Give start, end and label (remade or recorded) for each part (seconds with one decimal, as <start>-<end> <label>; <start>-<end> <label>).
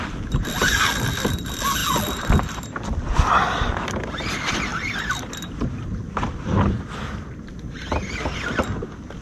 0.0-4.7 recorded; 4.7-7.1 remade; 7.1-9.2 recorded